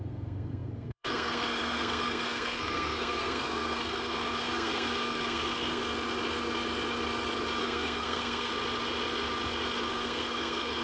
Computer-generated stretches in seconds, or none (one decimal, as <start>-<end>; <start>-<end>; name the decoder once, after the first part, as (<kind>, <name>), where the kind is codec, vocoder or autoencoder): 0.0-5.8 (codec, SNAC); 7.6-8.5; 9.9-10.8